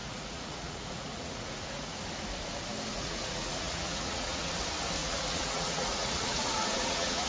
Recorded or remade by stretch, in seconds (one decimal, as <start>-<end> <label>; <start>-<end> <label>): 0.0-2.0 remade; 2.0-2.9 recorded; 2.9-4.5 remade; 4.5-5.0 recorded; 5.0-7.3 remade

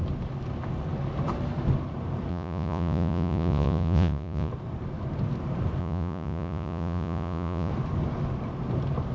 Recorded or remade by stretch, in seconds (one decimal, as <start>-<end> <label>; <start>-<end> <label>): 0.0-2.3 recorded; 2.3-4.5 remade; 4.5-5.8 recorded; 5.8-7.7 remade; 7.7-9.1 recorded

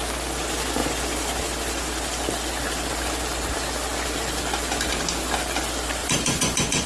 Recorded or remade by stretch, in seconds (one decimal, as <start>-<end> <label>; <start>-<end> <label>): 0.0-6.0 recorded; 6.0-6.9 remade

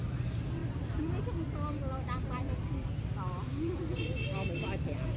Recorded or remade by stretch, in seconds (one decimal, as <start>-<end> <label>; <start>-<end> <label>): 0.0-5.2 recorded